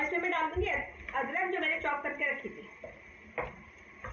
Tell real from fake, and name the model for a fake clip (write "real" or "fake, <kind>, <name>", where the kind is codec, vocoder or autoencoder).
real